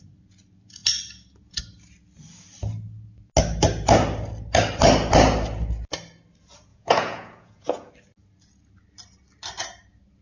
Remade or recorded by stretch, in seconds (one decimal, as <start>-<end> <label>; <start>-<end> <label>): 0.0-6.7 recorded; 6.7-7.9 remade; 7.9-10.2 recorded